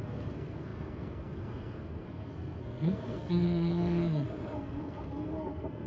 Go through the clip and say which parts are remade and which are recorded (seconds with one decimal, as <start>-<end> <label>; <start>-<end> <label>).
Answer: 0.0-5.9 remade